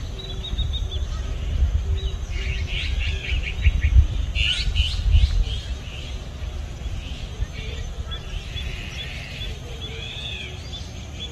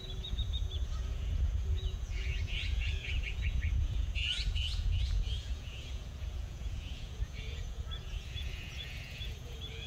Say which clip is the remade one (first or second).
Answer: second